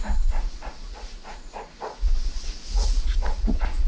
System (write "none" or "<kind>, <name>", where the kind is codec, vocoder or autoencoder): vocoder, Vocos